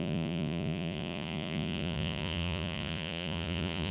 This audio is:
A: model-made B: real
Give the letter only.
A